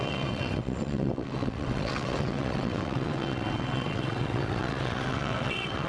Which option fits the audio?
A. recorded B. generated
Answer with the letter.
B